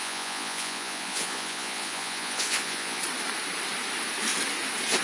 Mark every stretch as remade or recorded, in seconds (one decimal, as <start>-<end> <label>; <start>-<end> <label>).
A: 0.0-3.0 remade; 3.0-5.0 recorded